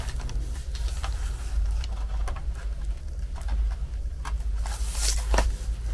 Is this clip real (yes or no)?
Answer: yes